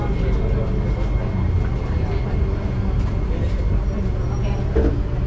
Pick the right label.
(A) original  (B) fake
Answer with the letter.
A